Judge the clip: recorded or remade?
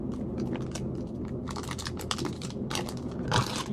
recorded